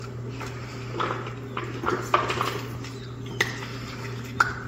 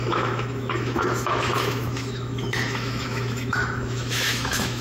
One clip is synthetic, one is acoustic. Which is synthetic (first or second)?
second